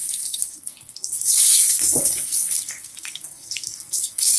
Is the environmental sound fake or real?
fake